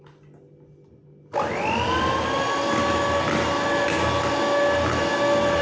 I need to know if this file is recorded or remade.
recorded